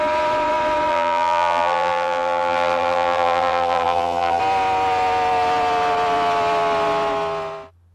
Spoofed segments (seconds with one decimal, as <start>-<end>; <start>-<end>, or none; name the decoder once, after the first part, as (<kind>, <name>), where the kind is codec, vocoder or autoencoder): 0.9-4.4 (vocoder, BigVGAN v2)

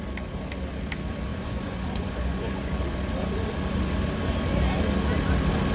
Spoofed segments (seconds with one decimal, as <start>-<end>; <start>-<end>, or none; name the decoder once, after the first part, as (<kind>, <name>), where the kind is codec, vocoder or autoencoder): 1.3-2.7 (vocoder, Vocos)